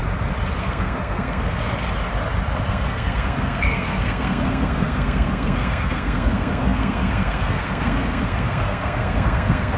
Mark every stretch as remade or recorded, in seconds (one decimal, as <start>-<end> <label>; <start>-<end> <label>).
0.0-0.6 recorded; 0.6-1.6 remade; 1.6-2.7 recorded; 2.7-9.8 remade

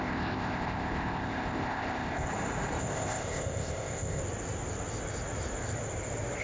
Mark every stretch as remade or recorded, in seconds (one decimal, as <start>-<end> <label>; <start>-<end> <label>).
0.0-2.3 remade; 2.3-2.8 recorded; 2.8-4.2 remade; 4.2-6.4 recorded

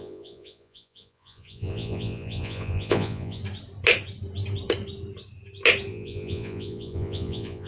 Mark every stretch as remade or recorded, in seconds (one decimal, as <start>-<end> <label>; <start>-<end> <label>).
0.0-3.4 remade; 3.4-5.9 recorded; 5.9-7.7 remade